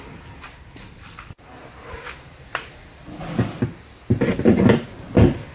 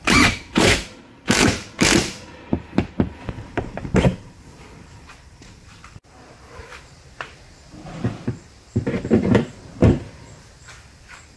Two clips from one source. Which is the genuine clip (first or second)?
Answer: first